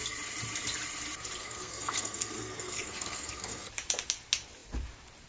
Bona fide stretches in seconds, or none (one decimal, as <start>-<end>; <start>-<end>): 0.0-1.4; 3.7-5.3